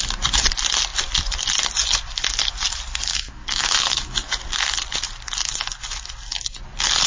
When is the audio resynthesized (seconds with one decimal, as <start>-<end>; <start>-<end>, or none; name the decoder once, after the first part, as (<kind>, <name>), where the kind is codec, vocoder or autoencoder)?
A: 3.1-4.4 (autoencoder, DAC-VAE)